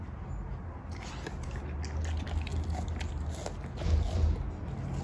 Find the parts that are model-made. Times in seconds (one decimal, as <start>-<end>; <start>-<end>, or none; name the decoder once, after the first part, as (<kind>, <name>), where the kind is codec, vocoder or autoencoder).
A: none